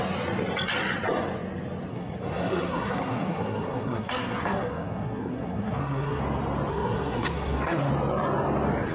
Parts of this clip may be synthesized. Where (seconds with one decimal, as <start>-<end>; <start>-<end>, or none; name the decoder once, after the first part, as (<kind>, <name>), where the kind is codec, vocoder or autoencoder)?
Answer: 1.9-6.2 (codec, SNAC); 6.7-7.9